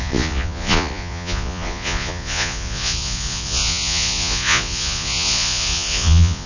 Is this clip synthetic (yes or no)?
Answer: yes